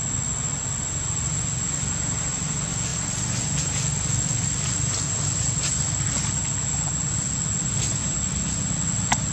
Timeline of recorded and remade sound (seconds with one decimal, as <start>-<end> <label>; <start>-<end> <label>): 0.0-9.3 recorded